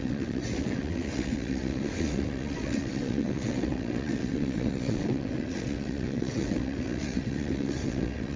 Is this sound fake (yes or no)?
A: yes